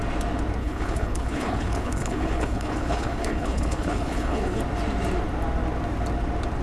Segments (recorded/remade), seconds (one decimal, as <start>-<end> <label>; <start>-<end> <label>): 0.0-0.6 recorded; 0.6-4.6 remade; 4.6-6.6 recorded